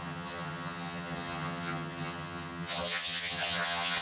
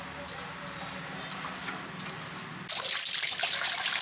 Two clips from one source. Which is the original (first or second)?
second